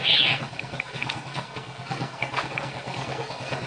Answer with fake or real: fake